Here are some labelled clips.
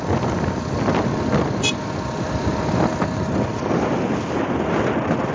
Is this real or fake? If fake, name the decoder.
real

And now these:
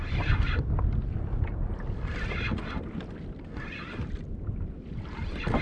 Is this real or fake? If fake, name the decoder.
real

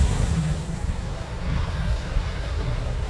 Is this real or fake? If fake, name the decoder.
fake, codec, SNAC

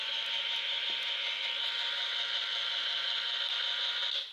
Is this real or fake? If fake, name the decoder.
real